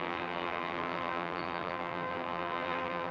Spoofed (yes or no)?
yes